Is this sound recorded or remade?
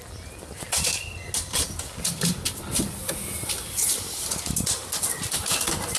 recorded